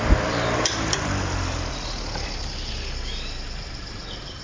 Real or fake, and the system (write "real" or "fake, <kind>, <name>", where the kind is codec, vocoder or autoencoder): fake, vocoder, BigVGAN v2